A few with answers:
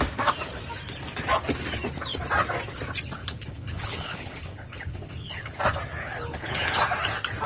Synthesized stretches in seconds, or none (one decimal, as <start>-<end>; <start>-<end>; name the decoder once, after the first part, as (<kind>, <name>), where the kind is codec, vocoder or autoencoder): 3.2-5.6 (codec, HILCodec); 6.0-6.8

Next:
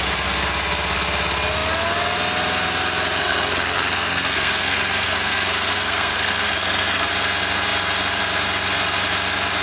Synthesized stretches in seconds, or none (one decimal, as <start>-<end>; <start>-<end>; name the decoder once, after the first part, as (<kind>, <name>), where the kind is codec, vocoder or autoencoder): 3.2-7.1 (codec, SNAC)

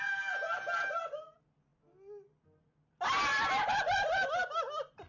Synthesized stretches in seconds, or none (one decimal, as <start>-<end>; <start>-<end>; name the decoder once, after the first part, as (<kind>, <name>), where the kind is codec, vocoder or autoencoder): none